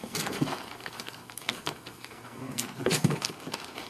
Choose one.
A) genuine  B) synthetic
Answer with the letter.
B